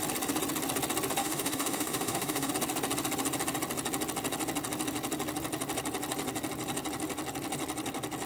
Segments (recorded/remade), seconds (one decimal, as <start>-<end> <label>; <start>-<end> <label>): 0.0-1.2 recorded; 1.2-2.5 remade; 2.5-8.3 recorded